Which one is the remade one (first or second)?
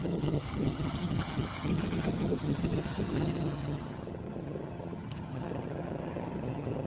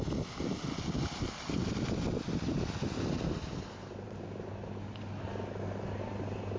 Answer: first